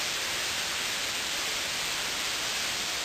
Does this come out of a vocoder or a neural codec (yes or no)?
yes